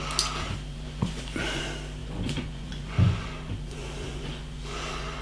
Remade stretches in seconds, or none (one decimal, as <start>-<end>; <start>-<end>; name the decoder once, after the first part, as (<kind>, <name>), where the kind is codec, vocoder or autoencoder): 0.7-1.6 (vocoder, Vocos); 2.0-5.2